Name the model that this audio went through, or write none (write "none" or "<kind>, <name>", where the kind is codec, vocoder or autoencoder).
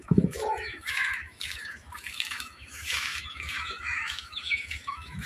autoencoder, DAC-VAE